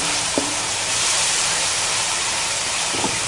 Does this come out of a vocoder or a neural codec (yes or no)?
yes